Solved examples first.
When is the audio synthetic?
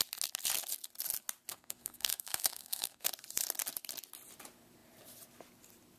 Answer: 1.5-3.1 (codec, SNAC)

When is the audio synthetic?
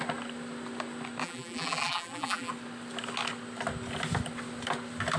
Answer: 1.2-2.5 (vocoder, BigVGAN v2)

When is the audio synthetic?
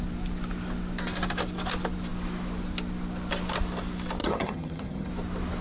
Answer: 4.2-5.1 (vocoder, HiFi-GAN)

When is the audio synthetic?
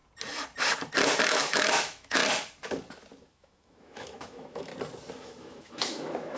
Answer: 1.2-2.2 (autoencoder, DAC-VAE); 3.2-4.7; 5.2-6.4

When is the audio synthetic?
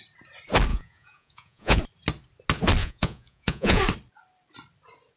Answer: 0.7-1.8 (vocoder, Vocos); 2.8-3.8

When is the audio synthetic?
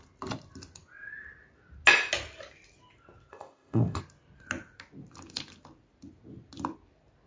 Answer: 3.3-4.0 (codec, ZipCodec)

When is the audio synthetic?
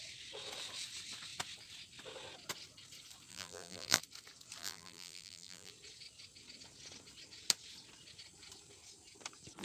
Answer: 3.3-4.0 (vocoder, BigVGAN v2); 4.6-5.7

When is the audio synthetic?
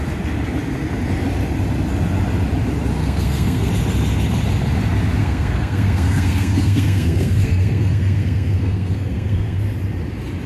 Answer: 3.0-3.7 (codec, SNAC); 5.2-9.6